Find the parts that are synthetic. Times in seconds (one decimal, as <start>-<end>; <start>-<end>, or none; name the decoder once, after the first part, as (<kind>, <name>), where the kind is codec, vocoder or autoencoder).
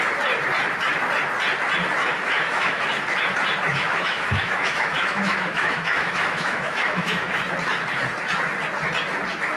2.0-2.8 (autoencoder, DAC-VAE); 3.7-7.4